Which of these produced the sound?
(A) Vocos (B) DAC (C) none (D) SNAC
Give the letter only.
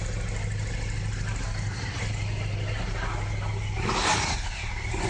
C